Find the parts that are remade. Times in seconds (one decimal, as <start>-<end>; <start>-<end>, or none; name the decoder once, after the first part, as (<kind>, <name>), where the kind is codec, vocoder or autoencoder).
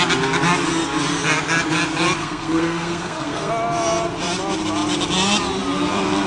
2.2-3.5 (codec, SNAC)